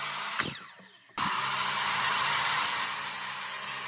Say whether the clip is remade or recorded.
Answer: recorded